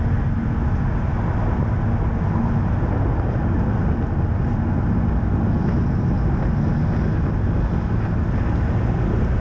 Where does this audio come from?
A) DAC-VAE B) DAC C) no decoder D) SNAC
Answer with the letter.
C